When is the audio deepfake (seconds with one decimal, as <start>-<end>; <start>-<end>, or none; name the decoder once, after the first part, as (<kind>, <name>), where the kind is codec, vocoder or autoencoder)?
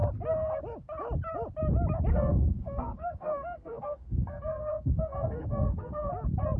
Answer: 2.1-6.1 (codec, SNAC)